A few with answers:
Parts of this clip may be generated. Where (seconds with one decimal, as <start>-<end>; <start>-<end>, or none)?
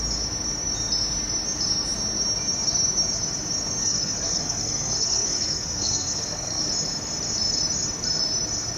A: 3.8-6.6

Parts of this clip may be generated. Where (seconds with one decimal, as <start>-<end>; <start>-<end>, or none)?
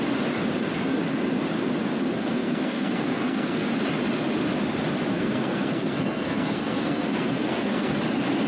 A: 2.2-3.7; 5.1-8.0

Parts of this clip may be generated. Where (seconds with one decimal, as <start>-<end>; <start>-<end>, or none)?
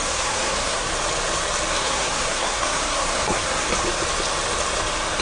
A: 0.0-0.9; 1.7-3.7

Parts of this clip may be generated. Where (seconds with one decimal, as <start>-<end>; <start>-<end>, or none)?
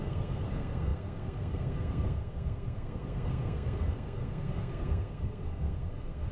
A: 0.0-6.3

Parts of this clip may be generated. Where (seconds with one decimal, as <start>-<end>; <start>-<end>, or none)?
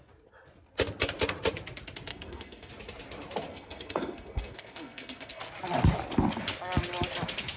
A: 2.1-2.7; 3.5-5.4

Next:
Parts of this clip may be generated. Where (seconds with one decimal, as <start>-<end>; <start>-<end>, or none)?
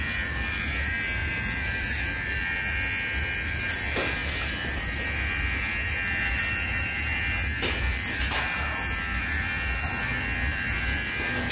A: none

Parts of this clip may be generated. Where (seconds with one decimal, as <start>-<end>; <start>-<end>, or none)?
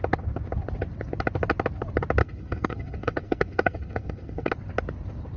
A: 2.2-4.5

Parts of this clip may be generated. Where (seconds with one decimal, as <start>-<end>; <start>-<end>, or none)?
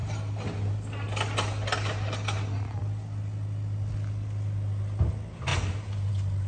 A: none